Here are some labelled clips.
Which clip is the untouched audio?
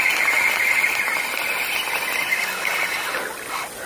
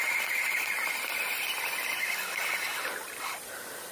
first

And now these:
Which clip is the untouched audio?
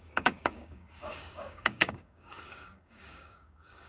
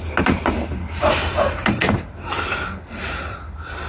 second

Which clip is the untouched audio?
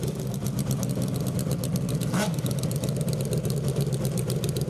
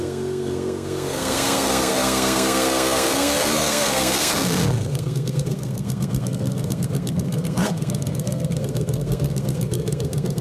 first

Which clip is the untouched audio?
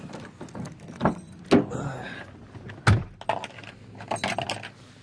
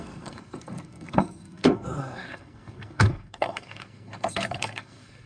first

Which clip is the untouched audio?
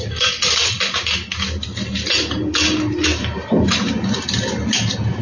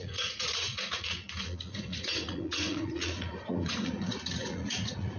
first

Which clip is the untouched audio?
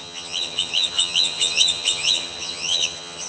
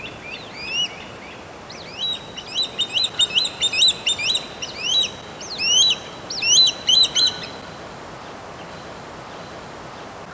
second